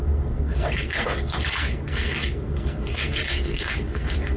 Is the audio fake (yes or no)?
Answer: yes